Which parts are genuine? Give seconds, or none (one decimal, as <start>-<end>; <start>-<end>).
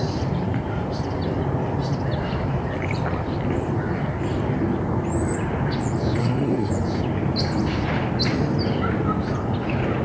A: 0.0-6.2; 6.7-10.0